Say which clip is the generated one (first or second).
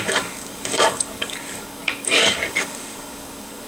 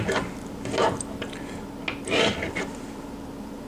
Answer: first